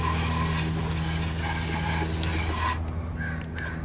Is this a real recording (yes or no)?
yes